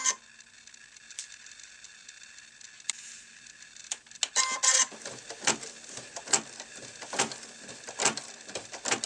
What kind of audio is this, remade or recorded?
recorded